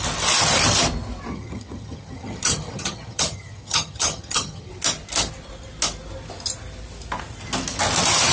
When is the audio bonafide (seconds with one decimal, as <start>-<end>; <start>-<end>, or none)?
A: 0.0-1.3; 4.7-8.3